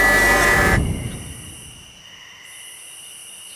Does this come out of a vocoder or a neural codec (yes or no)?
no